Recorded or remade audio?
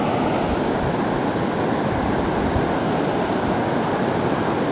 recorded